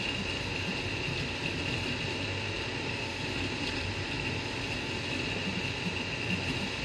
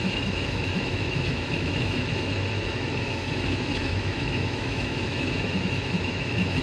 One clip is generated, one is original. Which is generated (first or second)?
second